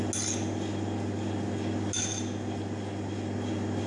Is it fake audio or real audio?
real